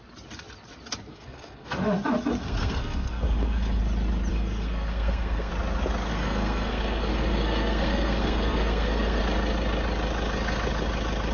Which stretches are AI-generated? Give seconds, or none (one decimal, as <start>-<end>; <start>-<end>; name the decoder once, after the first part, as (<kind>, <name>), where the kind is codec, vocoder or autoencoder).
1.1-1.8 (codec, SNAC); 2.4-3.8; 4.3-5.5; 6.1-9.2

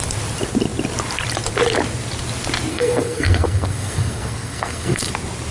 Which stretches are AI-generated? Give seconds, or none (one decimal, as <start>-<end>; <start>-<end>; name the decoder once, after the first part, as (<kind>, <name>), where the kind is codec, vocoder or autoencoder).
2.7-5.1 (codec, SNAC)